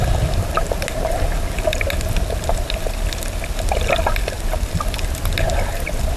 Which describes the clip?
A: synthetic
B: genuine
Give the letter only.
B